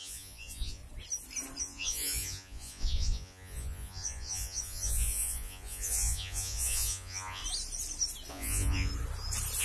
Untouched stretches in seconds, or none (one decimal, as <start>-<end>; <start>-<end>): 0.8-1.6; 7.4-8.3; 8.9-9.6